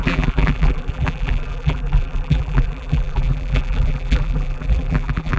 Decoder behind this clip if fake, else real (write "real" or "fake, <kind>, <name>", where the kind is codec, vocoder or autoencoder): fake, vocoder, BigVGAN v2